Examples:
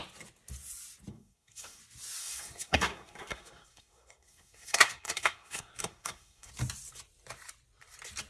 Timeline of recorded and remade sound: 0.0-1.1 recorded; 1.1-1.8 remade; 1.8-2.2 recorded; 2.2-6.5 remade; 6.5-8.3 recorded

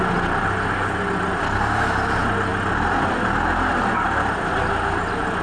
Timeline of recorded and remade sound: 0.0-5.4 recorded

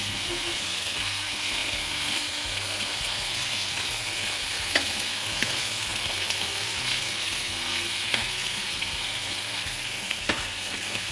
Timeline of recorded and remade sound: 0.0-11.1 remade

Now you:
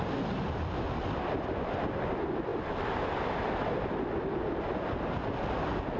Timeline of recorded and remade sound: 0.0-6.0 recorded